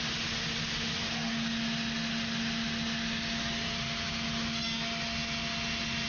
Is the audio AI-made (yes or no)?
no